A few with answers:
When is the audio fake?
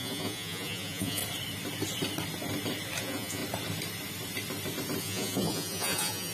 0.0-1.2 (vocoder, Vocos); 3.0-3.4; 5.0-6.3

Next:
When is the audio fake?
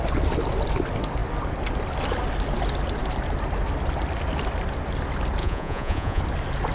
5.4-6.2 (vocoder, Vocos)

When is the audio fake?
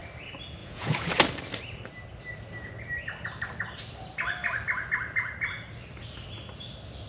0.6-1.1 (vocoder, Vocos)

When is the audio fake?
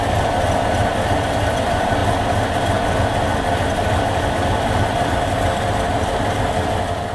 none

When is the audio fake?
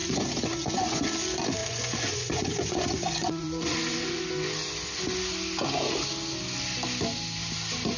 0.0-1.0 (vocoder, Vocos); 1.6-4.2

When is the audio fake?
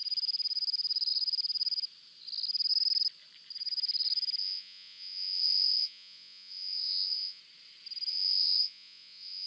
4.4-7.4 (vocoder, Vocos); 8.1-9.5